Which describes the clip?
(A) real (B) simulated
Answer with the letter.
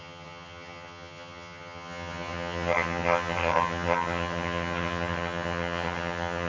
B